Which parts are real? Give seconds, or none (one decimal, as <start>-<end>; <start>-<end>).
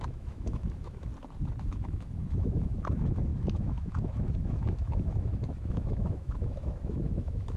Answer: 1.1-1.6